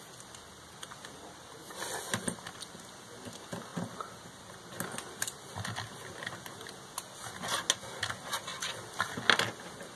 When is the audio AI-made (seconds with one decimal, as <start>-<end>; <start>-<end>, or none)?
none